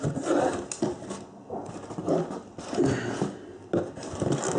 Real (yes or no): yes